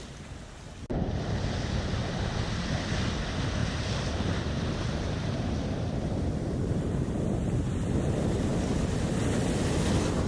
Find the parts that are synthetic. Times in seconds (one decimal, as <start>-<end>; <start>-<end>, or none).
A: 0.9-2.3; 3.6-7.6